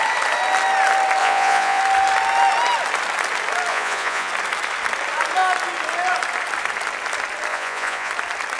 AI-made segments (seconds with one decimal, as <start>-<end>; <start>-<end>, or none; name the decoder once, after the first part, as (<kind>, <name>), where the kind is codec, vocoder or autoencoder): 1.2-1.8 (vocoder, Vocos); 3.7-4.3; 7.5-8.1